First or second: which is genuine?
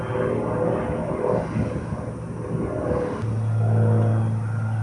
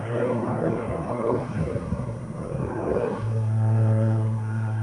first